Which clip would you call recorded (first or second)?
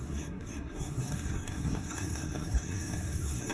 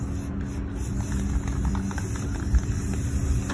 second